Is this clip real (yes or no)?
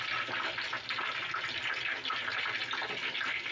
yes